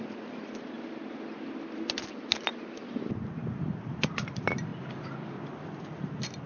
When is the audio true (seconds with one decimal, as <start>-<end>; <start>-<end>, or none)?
0.0-6.5